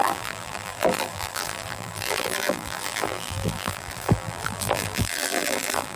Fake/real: fake